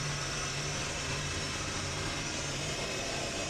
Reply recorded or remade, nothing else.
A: remade